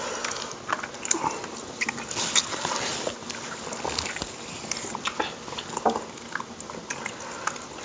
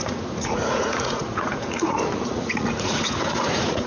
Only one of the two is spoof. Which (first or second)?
second